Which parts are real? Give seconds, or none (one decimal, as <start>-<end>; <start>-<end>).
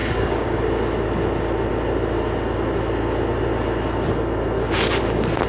0.6-5.5